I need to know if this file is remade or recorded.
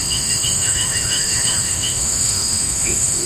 remade